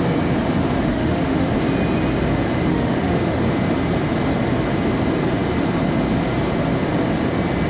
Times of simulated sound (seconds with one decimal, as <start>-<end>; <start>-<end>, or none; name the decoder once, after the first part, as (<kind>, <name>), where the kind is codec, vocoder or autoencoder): 0.9-1.5 (autoencoder, DAC-VAE); 2.7-3.4